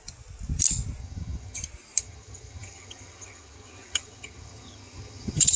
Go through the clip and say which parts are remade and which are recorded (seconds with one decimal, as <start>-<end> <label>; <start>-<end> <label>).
0.0-1.0 recorded; 1.0-1.6 remade; 1.6-2.0 recorded; 2.0-5.6 remade